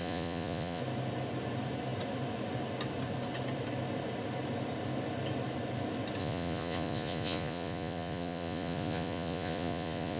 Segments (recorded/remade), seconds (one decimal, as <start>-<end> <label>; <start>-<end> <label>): 0.0-0.8 remade; 0.8-6.2 recorded; 6.2-10.2 remade